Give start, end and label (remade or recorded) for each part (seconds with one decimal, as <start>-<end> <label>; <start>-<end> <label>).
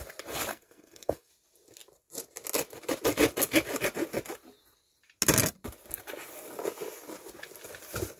0.0-0.5 recorded; 0.5-1.3 remade; 1.3-8.2 recorded